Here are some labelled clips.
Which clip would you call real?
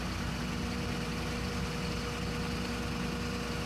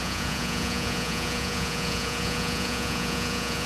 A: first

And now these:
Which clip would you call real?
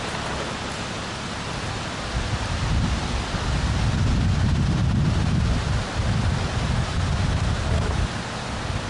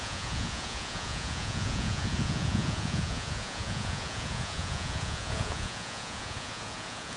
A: first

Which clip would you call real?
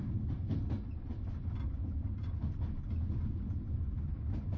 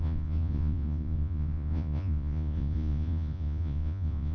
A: first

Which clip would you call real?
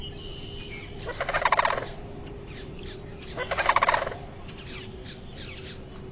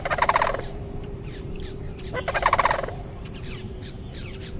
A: first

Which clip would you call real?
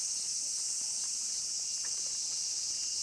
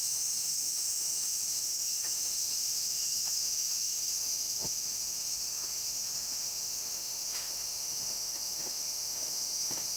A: first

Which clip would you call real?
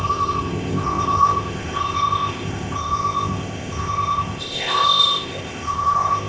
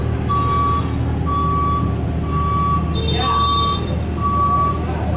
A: second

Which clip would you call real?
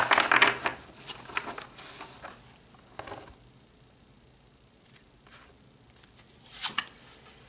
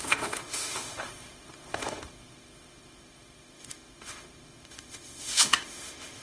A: first